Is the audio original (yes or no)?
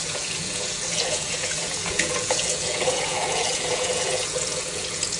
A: no